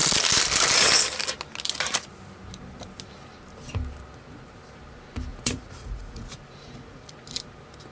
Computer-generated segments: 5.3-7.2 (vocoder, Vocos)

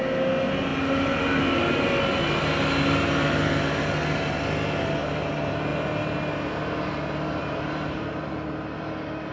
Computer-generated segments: 5.7-6.3 (vocoder, BigVGAN v2); 7.4-8.3

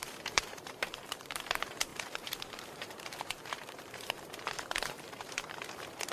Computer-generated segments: 0.0-6.1 (vocoder, BigVGAN v2)

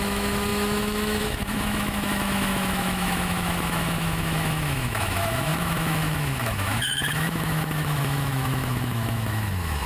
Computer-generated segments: 0.0-9.9 (autoencoder, DAC-VAE)

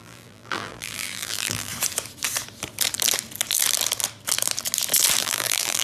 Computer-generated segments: 0.0-1.7 (vocoder, BigVGAN v2); 5.2-5.8

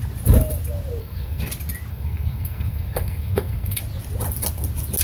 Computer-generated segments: 1.0-1.5 (codec, SNAC); 1.9-3.8

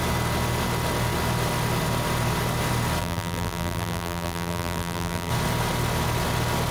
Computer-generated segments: 3.0-5.3 (vocoder, BigVGAN v2)

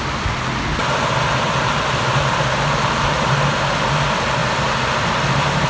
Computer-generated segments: none